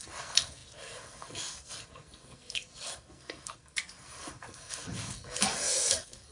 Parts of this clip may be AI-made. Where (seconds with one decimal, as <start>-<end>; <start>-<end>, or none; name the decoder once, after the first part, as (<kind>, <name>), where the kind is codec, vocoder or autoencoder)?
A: 0.0-6.3 (codec, SNAC)